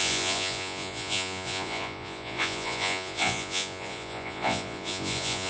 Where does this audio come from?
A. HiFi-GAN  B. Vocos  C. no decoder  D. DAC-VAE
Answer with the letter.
B